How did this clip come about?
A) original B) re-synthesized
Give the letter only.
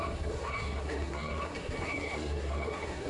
B